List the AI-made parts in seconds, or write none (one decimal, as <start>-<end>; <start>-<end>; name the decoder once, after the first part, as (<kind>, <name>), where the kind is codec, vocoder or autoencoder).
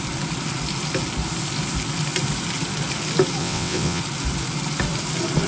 3.4-4.0 (vocoder, WaveNeXt)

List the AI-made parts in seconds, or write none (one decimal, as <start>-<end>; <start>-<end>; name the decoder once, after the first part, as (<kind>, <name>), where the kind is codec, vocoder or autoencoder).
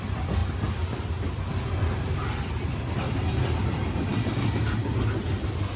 0.0-4.1 (vocoder, BigVGAN v2); 5.2-5.8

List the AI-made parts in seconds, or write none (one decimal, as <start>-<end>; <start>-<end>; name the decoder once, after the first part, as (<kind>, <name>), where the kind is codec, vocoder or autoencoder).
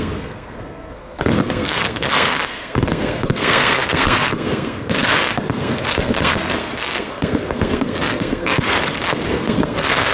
0.0-10.1 (codec, SNAC)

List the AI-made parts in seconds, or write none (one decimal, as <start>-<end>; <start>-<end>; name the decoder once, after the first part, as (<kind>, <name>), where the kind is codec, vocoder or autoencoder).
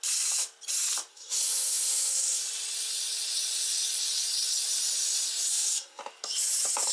1.1-2.4 (codec, SNAC); 5.5-6.0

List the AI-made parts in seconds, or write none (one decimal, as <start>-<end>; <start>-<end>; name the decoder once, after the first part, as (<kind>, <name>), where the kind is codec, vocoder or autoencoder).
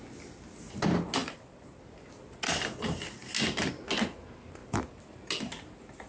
none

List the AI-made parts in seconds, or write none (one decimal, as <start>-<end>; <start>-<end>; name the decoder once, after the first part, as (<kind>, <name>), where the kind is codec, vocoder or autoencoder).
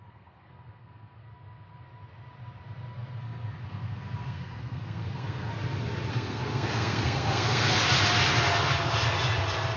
0.0-1.2 (codec, SNAC); 2.9-5.5; 6.1-7.8